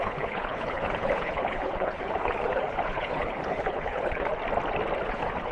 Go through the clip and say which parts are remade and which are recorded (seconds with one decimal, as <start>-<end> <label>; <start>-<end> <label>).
0.0-4.3 remade; 4.3-5.0 recorded; 5.0-5.5 remade